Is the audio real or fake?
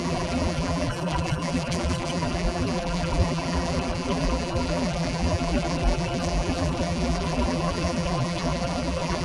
fake